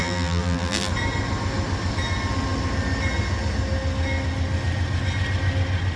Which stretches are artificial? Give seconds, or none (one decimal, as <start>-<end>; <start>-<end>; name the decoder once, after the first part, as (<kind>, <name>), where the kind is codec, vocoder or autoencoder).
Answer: 0.0-0.9 (vocoder, BigVGAN v2)